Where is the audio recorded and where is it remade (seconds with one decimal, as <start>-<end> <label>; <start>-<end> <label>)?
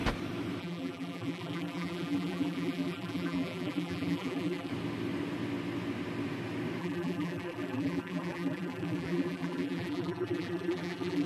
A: 0.0-0.6 recorded; 0.6-4.7 remade; 4.7-6.8 recorded; 6.8-11.3 remade